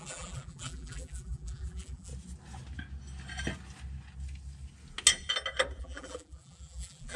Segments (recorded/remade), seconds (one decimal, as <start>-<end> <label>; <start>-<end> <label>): 0.0-2.1 remade; 2.1-5.8 recorded; 5.8-7.2 remade